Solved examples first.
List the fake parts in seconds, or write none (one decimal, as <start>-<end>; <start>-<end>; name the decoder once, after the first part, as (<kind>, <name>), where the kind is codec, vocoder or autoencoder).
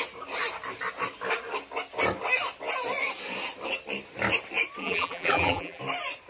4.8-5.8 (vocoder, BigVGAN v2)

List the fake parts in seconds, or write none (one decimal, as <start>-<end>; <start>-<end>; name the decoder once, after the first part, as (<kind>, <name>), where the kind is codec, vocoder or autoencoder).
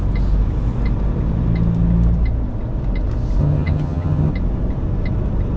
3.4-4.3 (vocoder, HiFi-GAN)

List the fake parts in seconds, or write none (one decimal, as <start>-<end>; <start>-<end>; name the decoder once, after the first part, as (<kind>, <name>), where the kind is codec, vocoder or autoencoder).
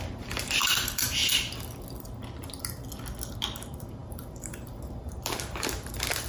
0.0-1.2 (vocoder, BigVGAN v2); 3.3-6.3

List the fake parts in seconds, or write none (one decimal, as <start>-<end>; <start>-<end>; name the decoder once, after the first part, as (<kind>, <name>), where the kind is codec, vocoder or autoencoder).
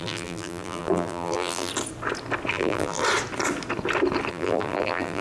0.0-1.7 (vocoder, BigVGAN v2); 2.5-3.0; 4.3-5.2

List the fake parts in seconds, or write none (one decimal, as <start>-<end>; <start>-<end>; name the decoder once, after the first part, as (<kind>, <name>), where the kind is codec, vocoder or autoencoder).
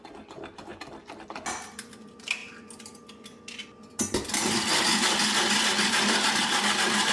none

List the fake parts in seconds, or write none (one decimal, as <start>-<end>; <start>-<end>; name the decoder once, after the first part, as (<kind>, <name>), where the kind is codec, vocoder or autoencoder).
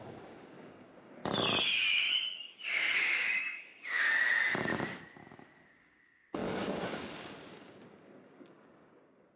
0.0-1.2 (codec, DAC); 1.9-4.7; 5.8-9.4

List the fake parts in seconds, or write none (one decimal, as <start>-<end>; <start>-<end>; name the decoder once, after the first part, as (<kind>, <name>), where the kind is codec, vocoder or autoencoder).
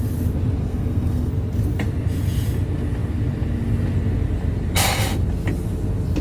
0.6-1.3 (codec, SNAC)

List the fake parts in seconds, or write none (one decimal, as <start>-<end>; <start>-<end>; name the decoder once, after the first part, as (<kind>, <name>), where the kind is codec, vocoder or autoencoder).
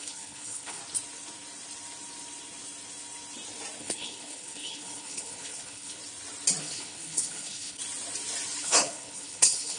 0.0-0.8 (codec, HILCodec); 3.8-6.0; 6.6-7.8; 8.6-9.8